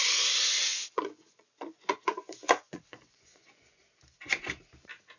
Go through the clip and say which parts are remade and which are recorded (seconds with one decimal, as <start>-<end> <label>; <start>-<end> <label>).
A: 0.0-0.7 recorded; 0.7-3.8 remade; 3.8-5.2 recorded